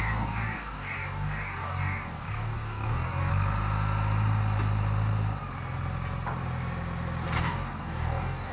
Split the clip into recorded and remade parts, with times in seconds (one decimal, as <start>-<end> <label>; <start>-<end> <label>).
0.0-3.3 remade; 3.3-7.4 recorded; 7.4-8.5 remade